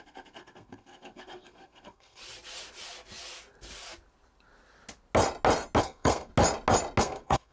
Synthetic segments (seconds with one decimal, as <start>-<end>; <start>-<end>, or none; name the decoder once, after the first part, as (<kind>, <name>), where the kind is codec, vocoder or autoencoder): 0.0-2.2 (codec, SNAC); 5.8-6.3; 7.0-7.5

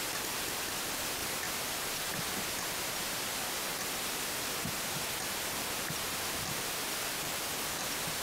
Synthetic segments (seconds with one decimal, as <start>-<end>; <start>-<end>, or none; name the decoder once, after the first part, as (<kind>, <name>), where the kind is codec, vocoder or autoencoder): 0.0-1.2 (vocoder, BigVGAN v2); 6.0-8.2